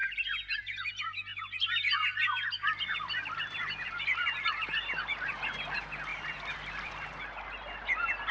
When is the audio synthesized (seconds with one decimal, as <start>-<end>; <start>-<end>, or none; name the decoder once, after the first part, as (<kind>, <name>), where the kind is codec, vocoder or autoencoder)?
0.0-0.9 (vocoder, BigVGAN v2); 1.3-4.8; 6.1-7.2

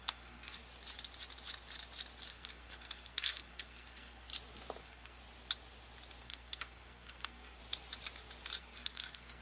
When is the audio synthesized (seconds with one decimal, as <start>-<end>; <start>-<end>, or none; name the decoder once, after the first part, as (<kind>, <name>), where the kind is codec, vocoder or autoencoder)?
0.0-0.6 (codec, SNAC); 2.3-4.3; 4.8-5.2; 6.2-7.6; 8.6-9.4

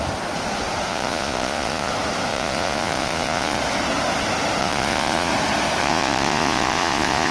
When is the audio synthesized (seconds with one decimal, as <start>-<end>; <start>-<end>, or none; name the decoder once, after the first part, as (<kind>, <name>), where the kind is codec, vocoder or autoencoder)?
0.9-1.9 (vocoder, Vocos); 2.3-3.6; 4.6-5.3; 5.8-7.3

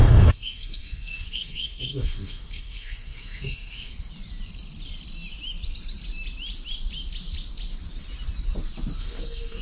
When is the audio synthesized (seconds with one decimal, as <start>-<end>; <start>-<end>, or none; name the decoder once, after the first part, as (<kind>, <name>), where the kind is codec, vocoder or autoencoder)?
0.0-3.9 (codec, SNAC); 9.0-9.6

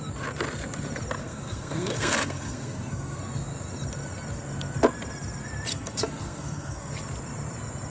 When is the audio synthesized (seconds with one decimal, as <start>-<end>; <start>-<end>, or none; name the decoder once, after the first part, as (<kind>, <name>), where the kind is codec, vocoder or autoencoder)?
1.2-3.2 (codec, SNAC); 5.7-6.9

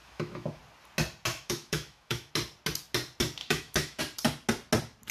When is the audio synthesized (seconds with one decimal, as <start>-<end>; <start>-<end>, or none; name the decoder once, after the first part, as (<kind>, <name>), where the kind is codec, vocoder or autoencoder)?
0.0-0.6 (autoencoder, DAC-VAE); 1.3-2.3; 3.4-4.0

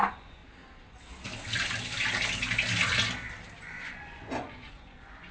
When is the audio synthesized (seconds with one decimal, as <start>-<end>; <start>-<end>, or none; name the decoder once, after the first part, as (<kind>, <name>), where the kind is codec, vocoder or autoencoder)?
0.0-0.4 (vocoder, Vocos); 3.6-5.3

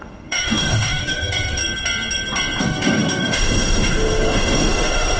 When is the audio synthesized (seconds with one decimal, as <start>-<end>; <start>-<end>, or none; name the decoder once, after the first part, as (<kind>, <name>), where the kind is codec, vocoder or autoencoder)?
0.0-1.6 (autoencoder, DAC-VAE); 2.6-5.2